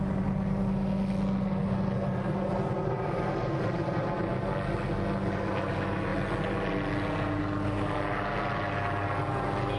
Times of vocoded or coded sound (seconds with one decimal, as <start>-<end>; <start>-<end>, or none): none